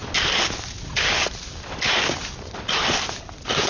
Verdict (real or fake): real